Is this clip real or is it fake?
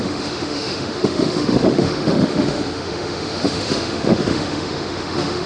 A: fake